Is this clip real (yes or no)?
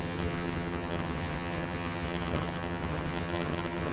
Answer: no